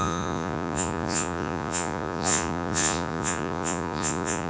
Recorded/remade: remade